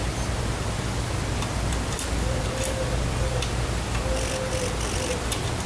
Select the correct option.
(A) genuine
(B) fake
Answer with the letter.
A